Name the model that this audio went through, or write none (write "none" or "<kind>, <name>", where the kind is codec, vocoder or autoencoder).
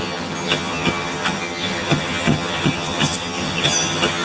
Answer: vocoder, HiFi-GAN